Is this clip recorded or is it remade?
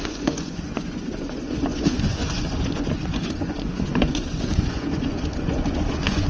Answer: remade